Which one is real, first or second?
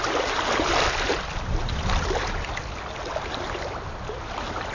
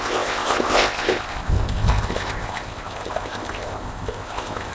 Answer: first